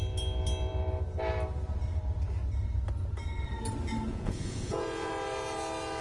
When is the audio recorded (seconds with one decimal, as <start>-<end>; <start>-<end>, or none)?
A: 0.0-4.1; 5.1-6.0